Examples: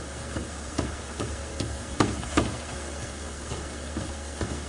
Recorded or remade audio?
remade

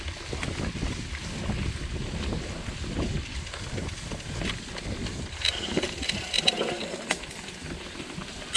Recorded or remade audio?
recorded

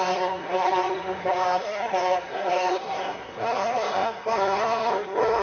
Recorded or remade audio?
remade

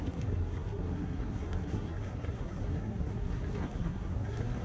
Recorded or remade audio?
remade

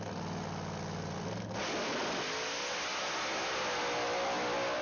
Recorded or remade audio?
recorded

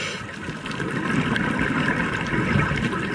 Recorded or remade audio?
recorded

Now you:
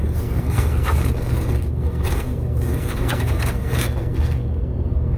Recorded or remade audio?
remade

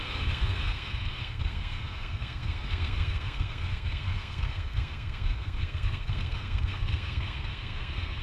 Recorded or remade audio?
remade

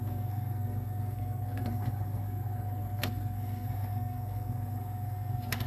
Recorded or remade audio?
remade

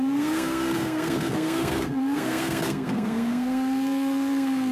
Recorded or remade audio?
remade